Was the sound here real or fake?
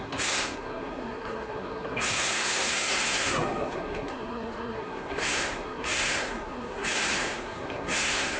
fake